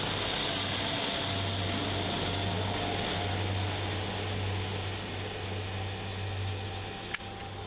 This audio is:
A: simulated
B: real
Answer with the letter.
B